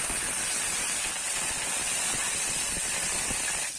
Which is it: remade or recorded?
recorded